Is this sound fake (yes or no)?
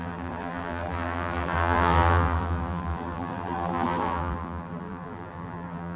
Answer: yes